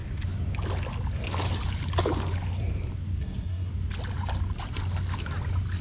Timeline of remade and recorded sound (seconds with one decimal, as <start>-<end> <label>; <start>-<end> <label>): 0.0-3.2 recorded; 3.2-3.7 remade; 3.7-5.8 recorded